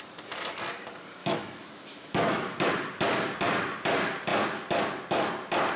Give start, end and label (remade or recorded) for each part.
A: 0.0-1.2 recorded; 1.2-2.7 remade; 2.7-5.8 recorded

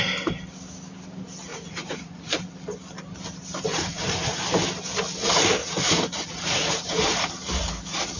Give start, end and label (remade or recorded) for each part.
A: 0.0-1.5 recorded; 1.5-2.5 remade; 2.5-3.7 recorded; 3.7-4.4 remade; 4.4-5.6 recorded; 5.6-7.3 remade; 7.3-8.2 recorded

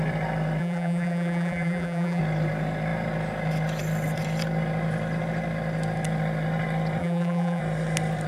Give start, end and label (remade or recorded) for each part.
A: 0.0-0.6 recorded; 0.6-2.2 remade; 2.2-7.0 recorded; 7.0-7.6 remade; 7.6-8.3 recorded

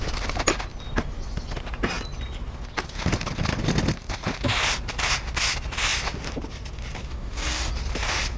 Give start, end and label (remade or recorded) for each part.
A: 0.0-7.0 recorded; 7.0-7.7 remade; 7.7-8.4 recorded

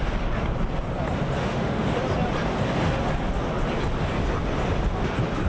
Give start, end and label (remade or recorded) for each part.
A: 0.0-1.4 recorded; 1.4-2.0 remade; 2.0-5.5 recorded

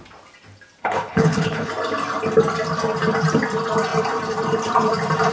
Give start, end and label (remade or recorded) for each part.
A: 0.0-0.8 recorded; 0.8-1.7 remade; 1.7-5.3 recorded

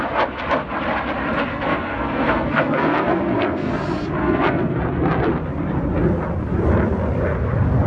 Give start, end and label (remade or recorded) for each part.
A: 0.0-1.5 recorded; 1.5-3.7 remade; 3.7-4.2 recorded; 4.2-4.8 remade; 4.8-7.9 recorded

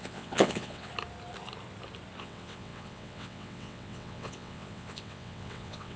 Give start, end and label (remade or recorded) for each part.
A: 0.0-0.9 remade; 0.9-2.2 recorded; 2.2-6.0 remade